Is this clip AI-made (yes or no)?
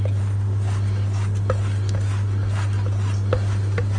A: no